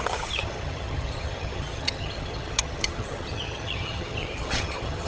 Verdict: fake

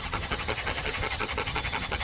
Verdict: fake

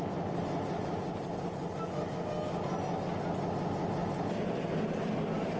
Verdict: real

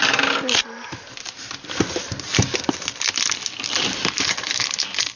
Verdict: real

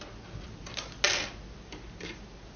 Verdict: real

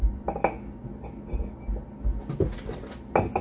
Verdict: real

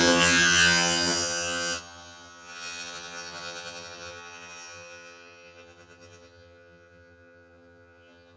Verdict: fake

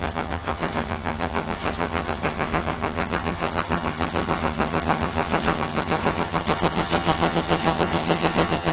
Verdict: fake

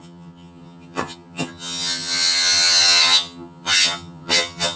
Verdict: fake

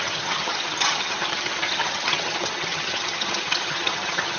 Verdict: fake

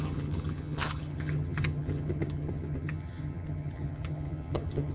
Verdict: fake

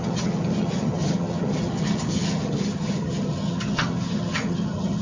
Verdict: fake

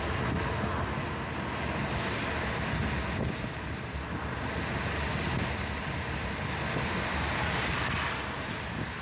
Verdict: real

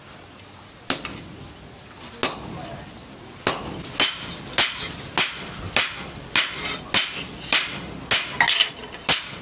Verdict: real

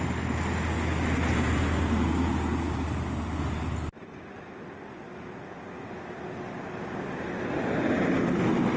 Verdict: real